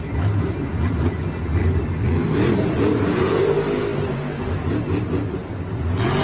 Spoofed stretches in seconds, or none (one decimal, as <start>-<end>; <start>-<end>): 1.5-3.4; 3.9-4.5